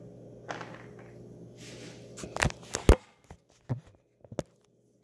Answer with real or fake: real